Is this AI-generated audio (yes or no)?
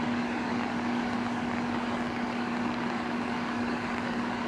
yes